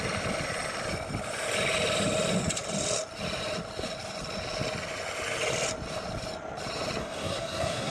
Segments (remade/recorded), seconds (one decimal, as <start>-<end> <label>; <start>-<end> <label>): 0.0-7.0 recorded; 7.0-7.9 remade